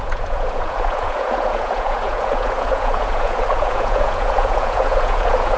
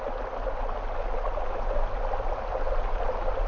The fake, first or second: first